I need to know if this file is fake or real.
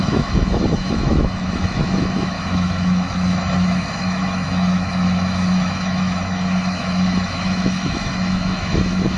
fake